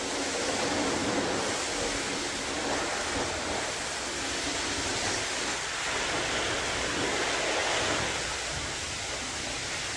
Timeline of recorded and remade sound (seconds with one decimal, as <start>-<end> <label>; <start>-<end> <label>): 0.0-10.0 recorded

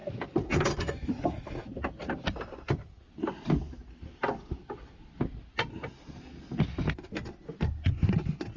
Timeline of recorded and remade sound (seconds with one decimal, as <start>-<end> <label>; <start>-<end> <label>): 0.0-8.6 recorded

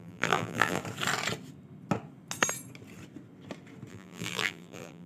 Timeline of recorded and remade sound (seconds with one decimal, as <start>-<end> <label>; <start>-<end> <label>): 0.0-0.8 remade; 0.8-3.9 recorded; 3.9-5.1 remade

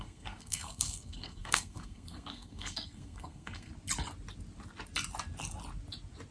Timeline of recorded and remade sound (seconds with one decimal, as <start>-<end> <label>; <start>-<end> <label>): 0.0-3.7 remade; 3.7-6.3 recorded

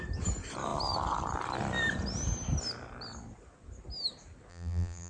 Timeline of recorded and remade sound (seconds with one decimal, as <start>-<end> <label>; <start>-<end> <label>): 0.0-4.5 recorded; 4.5-5.1 remade

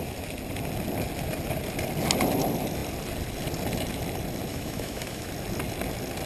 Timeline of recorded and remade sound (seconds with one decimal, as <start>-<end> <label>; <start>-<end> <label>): 0.0-4.5 recorded; 4.5-5.3 remade; 5.3-6.3 recorded

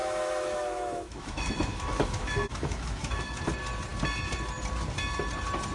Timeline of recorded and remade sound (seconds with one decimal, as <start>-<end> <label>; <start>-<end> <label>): 0.0-3.4 remade; 3.4-5.7 recorded

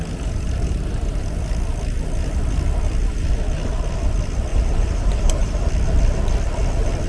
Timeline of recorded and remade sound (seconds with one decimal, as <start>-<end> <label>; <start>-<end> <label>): 0.0-4.5 recorded; 4.5-5.7 remade; 5.7-7.1 recorded